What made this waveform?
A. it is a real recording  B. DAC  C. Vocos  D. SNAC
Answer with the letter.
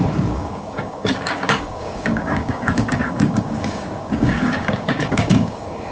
B